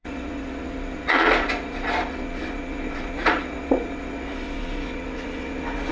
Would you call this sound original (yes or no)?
no